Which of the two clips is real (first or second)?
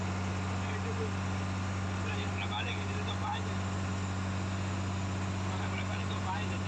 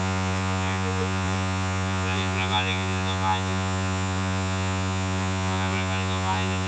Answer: first